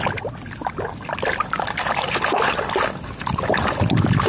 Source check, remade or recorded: recorded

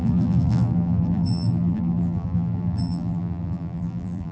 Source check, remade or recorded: remade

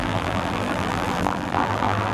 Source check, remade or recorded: remade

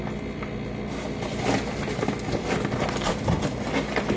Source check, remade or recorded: recorded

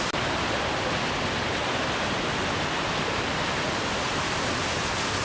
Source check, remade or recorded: recorded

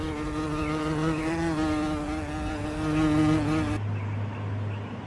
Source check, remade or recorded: recorded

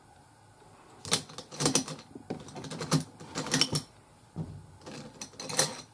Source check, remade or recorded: recorded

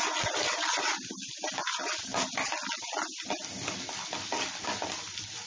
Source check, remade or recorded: recorded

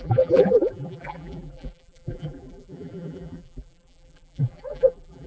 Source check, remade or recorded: remade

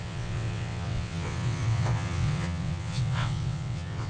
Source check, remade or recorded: remade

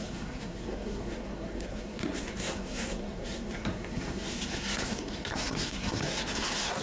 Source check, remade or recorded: remade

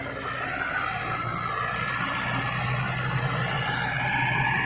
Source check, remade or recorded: recorded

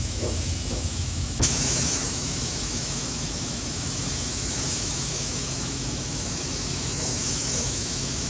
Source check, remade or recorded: remade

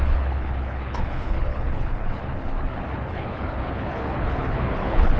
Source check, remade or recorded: remade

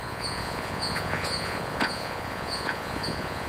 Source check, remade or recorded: remade